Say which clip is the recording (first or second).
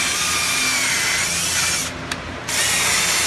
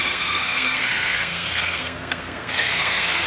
first